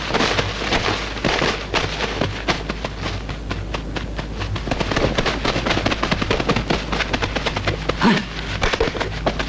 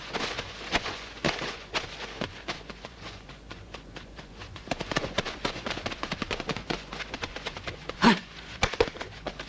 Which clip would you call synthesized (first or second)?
second